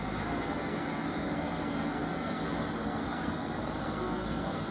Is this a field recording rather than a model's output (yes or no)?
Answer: no